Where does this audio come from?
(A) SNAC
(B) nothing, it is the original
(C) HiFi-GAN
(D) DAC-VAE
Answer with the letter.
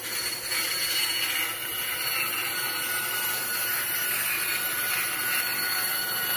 B